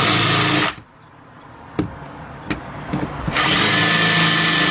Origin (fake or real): real